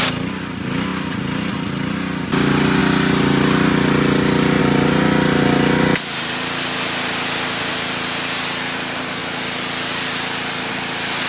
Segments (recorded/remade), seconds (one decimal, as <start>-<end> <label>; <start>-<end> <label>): 0.0-11.3 recorded